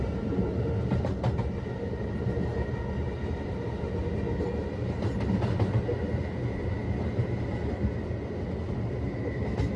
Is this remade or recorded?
recorded